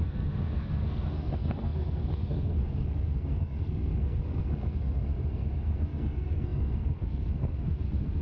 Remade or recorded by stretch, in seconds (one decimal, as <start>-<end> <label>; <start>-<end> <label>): 0.0-8.2 remade